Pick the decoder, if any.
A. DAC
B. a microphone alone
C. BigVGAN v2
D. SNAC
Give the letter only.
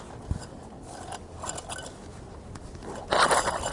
B